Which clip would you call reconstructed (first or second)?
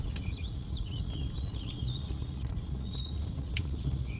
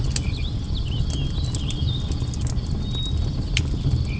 first